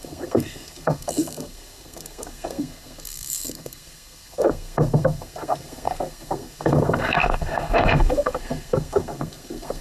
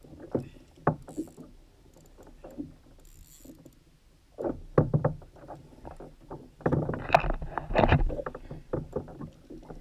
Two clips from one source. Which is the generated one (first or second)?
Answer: first